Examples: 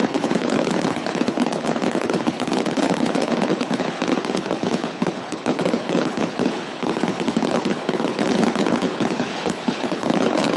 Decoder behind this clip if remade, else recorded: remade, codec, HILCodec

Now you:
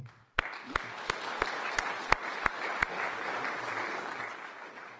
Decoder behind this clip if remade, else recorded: recorded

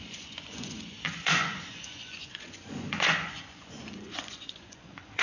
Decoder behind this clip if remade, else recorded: remade, vocoder, Vocos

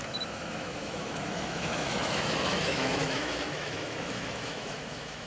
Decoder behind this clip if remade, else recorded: remade, autoencoder, DAC-VAE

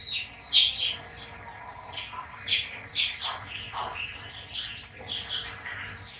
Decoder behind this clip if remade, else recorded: recorded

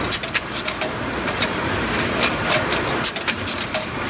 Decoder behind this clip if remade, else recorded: recorded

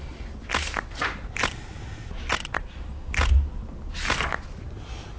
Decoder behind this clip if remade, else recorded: recorded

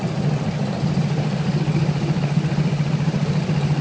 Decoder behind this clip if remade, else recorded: recorded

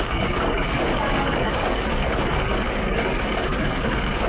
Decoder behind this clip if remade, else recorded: remade, codec, DAC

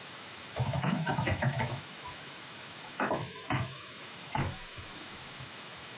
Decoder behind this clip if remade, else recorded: remade, autoencoder, DAC-VAE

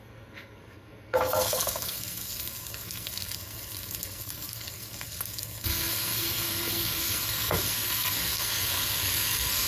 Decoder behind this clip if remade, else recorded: remade, codec, SNAC